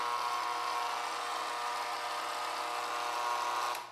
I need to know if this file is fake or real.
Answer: real